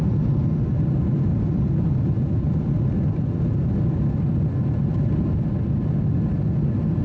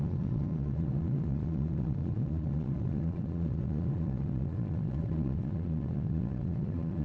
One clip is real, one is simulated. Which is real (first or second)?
first